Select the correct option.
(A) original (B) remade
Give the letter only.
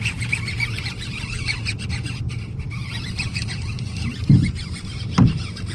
B